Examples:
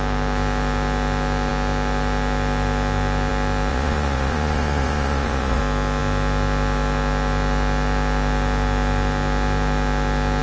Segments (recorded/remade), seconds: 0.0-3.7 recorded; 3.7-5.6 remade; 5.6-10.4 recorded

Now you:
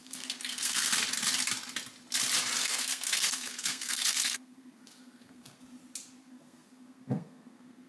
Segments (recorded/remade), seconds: 0.0-0.9 remade; 0.9-2.6 recorded; 2.6-5.6 remade; 5.6-6.2 recorded; 6.2-7.9 remade

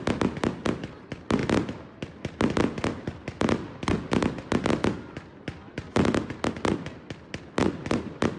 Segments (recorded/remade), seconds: 0.0-8.4 recorded